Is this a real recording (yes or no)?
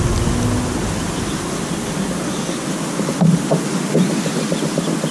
yes